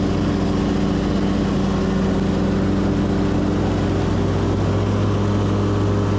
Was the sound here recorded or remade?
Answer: recorded